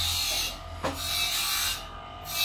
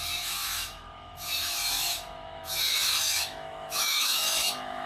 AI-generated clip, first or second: second